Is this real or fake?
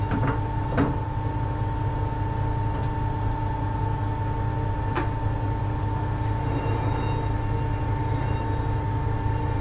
real